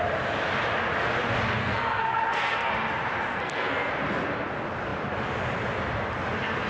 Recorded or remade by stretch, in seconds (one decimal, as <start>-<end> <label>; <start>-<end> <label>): 0.0-1.6 recorded; 1.6-2.7 remade; 2.7-3.3 recorded; 3.3-3.9 remade; 3.9-6.7 recorded